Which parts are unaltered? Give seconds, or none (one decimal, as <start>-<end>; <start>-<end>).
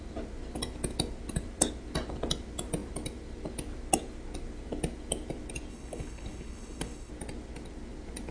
0.0-5.7; 7.1-8.3